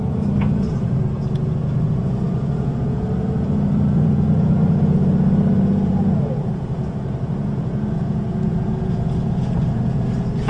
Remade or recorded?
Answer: remade